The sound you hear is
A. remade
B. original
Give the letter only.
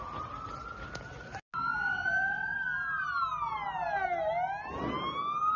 B